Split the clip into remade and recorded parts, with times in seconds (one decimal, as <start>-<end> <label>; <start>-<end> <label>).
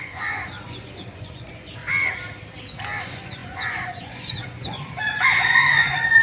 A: 0.0-1.8 remade; 1.8-3.0 recorded; 3.0-6.2 remade